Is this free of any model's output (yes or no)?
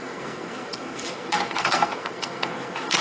no